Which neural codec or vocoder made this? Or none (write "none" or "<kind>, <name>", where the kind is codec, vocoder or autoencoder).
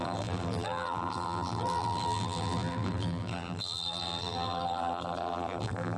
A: vocoder, BigVGAN v2